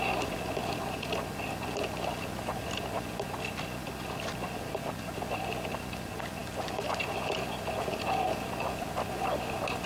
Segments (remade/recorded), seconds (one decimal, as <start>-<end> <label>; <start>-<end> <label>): 0.0-9.9 recorded